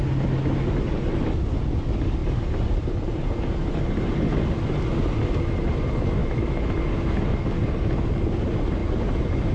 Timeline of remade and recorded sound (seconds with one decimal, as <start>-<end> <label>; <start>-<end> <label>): 0.0-6.2 recorded; 6.2-6.8 remade; 6.8-9.5 recorded